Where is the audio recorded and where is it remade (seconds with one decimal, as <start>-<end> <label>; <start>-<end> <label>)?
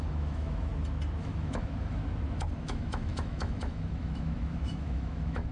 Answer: 0.0-0.7 remade; 0.7-1.2 recorded; 1.2-2.0 remade; 2.0-2.6 recorded; 2.6-5.5 remade